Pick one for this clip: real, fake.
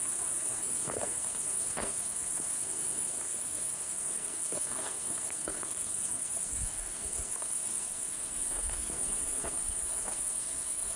fake